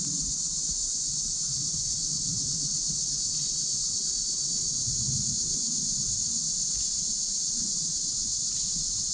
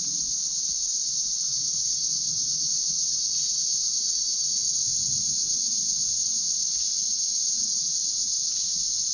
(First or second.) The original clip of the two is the second